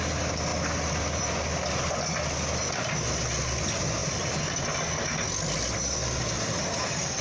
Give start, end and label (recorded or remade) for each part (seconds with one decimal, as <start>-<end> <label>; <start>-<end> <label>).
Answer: 0.0-7.2 recorded